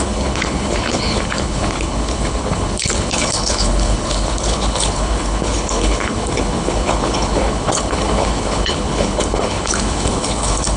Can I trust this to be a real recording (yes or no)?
no